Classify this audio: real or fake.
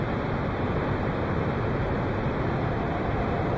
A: fake